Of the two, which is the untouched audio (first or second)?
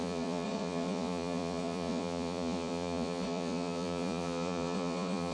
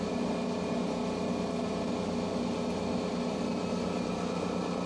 second